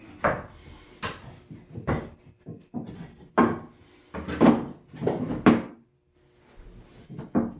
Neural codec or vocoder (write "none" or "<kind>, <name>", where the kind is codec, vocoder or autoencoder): none